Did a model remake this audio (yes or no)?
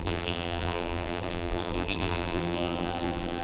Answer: yes